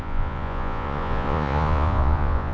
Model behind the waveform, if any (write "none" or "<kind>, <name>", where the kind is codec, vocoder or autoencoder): vocoder, Vocos